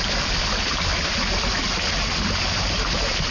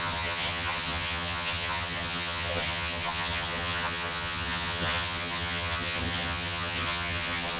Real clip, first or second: first